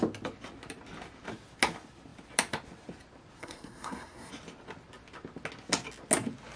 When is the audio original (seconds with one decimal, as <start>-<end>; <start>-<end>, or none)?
0.0-3.4; 4.3-6.6